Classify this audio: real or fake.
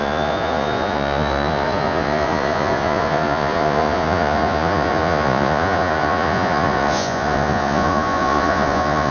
fake